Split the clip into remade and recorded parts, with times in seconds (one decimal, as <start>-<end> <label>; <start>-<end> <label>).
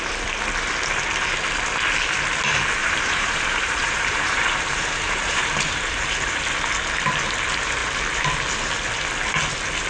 0.0-2.8 recorded; 2.8-6.4 remade; 6.4-9.9 recorded